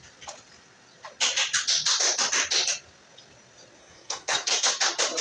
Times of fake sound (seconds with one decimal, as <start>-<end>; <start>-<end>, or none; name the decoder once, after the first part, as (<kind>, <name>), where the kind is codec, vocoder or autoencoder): 3.8-4.7 (codec, SNAC)